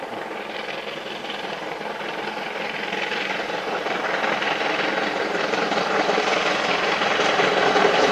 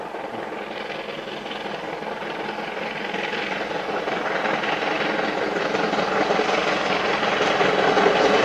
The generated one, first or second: first